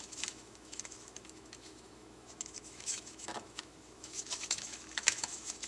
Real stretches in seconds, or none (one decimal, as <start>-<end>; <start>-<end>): none